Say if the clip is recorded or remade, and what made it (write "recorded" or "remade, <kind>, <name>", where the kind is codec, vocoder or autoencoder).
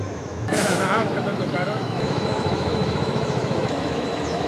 remade, autoencoder, DAC-VAE